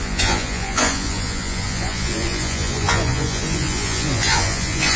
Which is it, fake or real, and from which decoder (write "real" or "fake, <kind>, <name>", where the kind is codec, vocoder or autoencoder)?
fake, vocoder, Vocos